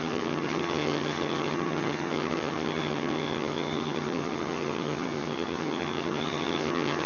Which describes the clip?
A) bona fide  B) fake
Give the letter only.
B